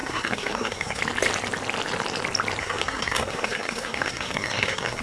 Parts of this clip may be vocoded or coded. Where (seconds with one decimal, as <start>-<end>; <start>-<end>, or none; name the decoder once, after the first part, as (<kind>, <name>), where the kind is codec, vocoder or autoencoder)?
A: 0.0-1.0 (codec, SNAC); 2.6-5.0